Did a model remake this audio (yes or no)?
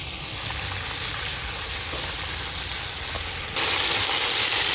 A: no